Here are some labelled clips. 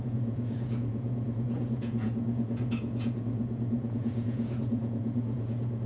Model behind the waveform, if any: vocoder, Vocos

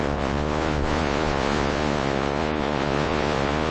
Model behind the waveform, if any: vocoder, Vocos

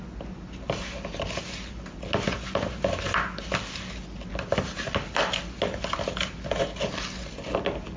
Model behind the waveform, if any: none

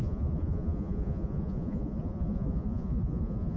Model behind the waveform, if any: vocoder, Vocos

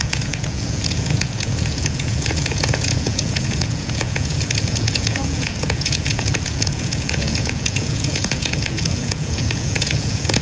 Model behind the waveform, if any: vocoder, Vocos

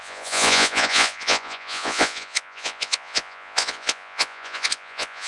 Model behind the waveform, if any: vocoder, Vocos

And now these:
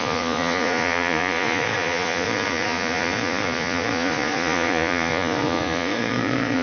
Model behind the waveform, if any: vocoder, Vocos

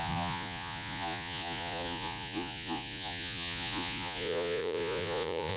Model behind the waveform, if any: vocoder, Vocos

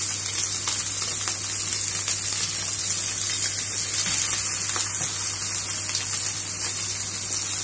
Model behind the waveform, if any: none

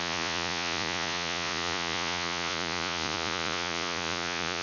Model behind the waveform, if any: vocoder, Vocos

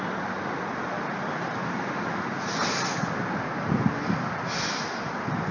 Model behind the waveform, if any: none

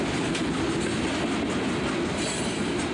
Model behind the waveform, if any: none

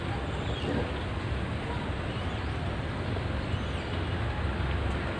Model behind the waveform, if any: none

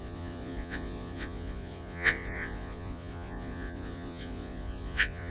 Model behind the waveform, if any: vocoder, Vocos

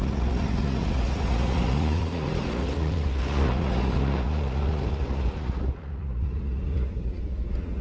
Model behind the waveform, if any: vocoder, Vocos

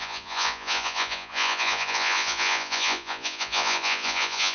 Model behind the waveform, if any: vocoder, Vocos